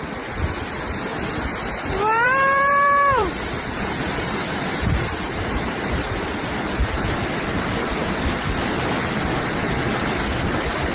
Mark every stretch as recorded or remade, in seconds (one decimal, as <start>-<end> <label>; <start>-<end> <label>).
0.0-2.1 recorded; 2.1-6.1 remade; 6.1-10.9 recorded